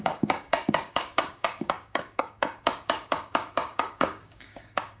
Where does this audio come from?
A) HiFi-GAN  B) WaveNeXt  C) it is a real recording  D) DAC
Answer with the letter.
D